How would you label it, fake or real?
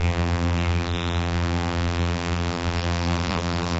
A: fake